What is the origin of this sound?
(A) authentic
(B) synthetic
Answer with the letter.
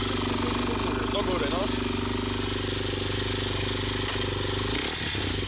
A